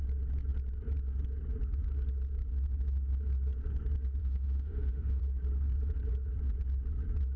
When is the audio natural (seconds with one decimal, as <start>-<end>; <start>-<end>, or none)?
0.0-4.2; 5.2-7.4